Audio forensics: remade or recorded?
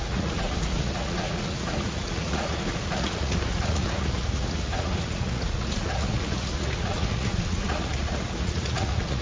remade